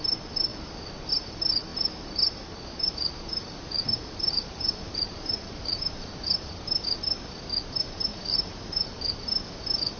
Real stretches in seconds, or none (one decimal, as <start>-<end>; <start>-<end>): 0.0-0.5; 1.1-1.7; 6.0-8.1; 8.9-10.0